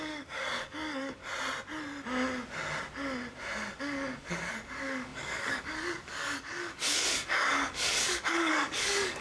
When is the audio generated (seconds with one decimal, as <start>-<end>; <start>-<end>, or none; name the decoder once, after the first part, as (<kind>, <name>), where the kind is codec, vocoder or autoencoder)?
0.0-1.2 (codec, DAC); 3.8-9.2